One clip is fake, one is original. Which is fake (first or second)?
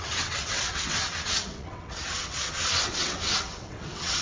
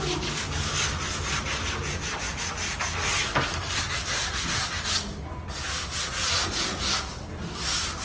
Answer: first